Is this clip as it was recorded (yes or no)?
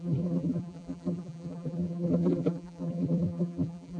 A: no